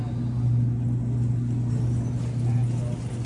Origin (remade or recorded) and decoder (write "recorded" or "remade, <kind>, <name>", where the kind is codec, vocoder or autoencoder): recorded